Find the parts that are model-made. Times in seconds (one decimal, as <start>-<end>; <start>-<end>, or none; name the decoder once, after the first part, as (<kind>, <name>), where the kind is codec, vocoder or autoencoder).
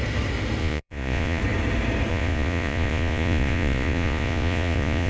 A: 0.6-1.4 (vocoder, Vocos); 2.1-5.1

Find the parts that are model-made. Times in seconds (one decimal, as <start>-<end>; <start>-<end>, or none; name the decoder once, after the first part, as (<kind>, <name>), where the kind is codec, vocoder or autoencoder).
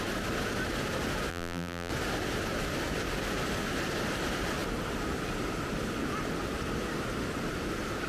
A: 1.3-1.9 (vocoder, BigVGAN v2)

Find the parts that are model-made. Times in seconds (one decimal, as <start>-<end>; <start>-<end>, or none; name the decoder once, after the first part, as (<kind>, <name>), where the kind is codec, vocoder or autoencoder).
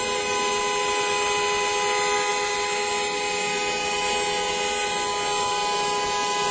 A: none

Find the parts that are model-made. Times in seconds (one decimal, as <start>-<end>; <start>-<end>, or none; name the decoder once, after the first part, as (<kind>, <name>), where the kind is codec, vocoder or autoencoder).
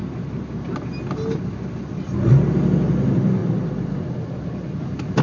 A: none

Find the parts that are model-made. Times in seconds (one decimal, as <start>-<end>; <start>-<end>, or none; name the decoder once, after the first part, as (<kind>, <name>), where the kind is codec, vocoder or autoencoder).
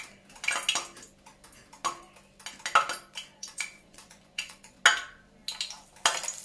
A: 3.4-4.8 (vocoder, Vocos)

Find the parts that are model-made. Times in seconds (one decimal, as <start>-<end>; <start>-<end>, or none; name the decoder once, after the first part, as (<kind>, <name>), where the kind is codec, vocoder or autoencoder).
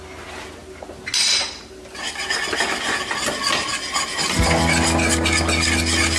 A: none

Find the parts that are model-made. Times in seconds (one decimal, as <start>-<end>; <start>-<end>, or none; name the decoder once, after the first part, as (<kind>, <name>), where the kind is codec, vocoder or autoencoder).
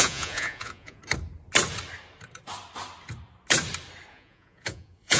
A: 0.0-1.0 (vocoder, Vocos); 4.1-5.2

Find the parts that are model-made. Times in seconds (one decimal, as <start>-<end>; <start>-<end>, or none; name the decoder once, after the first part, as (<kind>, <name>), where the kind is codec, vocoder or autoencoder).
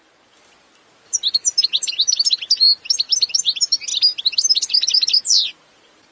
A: none